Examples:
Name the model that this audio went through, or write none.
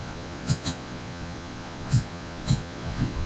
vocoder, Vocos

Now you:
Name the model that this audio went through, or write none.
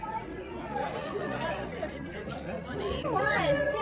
vocoder, Vocos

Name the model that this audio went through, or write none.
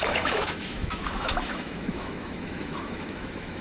autoencoder, DAC-VAE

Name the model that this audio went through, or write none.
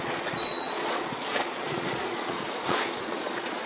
vocoder, Vocos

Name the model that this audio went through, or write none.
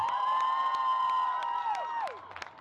none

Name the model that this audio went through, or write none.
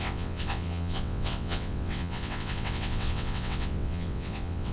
vocoder, WaveNeXt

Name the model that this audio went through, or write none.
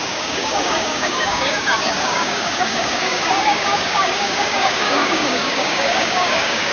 codec, DAC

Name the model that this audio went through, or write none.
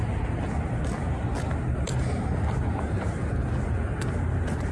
none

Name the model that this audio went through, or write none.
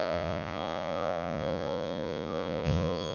vocoder, Vocos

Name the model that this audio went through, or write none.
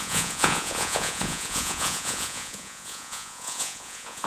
vocoder, Vocos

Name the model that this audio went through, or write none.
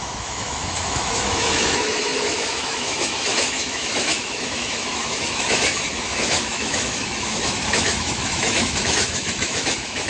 autoencoder, DAC-VAE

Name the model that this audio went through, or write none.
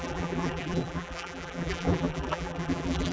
vocoder, BigVGAN v2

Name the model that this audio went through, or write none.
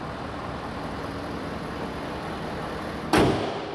none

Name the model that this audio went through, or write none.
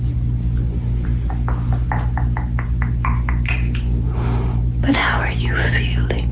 none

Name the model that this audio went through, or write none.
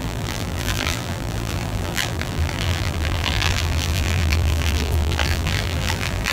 vocoder, BigVGAN v2